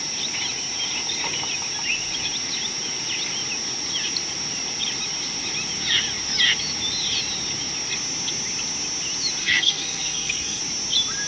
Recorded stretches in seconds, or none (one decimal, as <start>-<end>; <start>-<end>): 0.0-9.4; 10.6-11.3